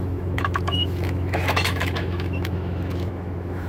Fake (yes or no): yes